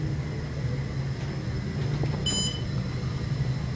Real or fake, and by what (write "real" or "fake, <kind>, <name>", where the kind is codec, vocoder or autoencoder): real